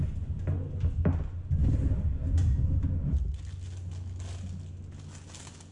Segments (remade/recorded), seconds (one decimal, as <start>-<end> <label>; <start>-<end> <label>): 0.0-5.7 recorded